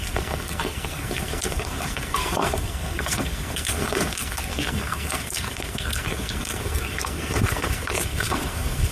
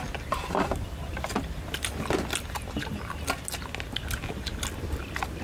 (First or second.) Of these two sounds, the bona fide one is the second